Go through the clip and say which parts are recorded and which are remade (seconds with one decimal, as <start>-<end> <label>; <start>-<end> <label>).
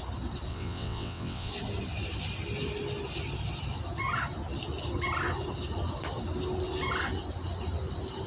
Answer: 0.0-0.5 recorded; 0.5-1.5 remade; 1.5-8.3 recorded